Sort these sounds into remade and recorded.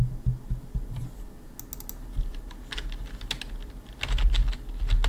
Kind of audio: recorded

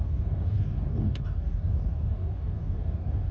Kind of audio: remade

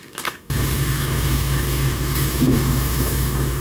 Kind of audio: remade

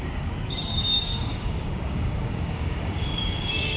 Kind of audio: remade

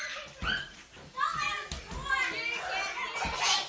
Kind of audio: recorded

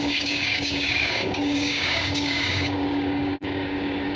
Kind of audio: remade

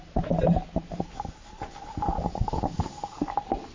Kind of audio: recorded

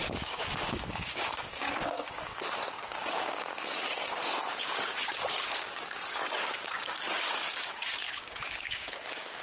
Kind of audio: remade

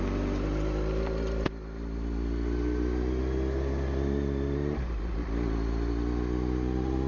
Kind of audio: recorded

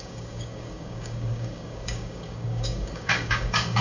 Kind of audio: remade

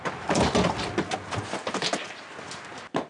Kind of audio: recorded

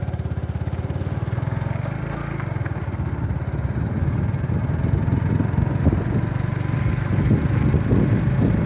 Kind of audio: recorded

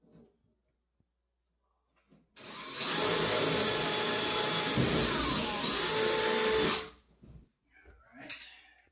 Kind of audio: recorded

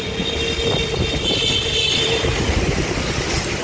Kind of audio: recorded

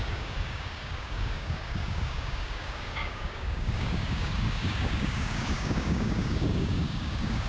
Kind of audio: remade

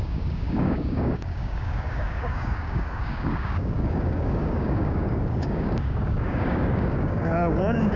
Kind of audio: remade